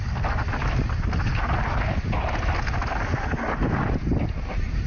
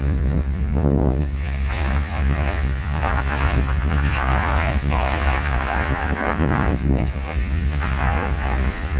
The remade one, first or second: second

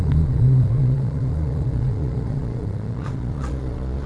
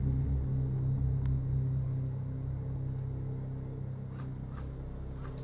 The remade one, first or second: first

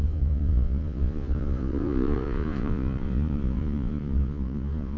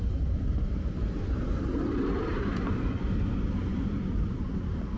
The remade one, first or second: first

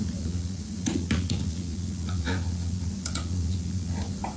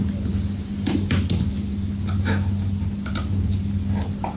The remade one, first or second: first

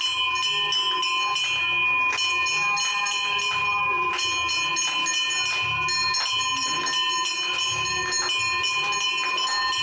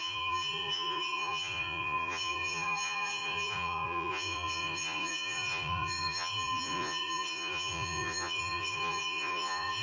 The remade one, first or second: second